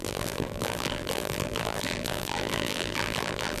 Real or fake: fake